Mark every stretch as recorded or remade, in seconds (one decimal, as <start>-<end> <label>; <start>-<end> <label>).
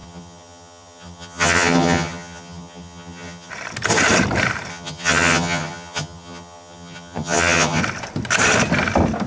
0.0-3.5 remade; 3.5-4.7 recorded; 4.7-7.8 remade; 7.8-9.3 recorded